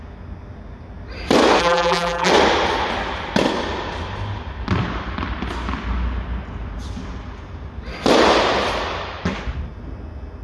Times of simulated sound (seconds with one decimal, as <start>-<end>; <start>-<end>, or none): 1.6-2.3